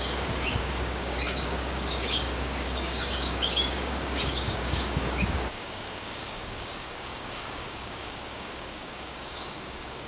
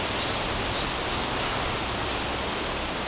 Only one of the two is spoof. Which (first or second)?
first